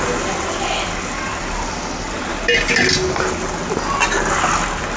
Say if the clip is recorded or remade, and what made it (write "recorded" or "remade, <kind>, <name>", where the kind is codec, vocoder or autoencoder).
recorded